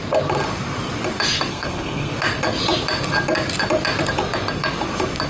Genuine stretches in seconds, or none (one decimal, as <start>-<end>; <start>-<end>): 0.0-1.5; 2.1-5.3